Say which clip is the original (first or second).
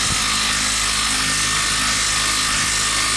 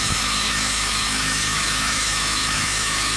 first